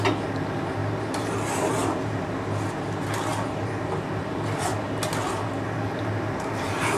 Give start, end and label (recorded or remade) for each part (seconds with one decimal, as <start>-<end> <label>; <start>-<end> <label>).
0.0-7.0 recorded